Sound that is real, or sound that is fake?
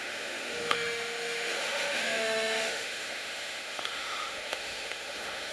fake